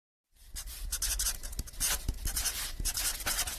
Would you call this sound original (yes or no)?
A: yes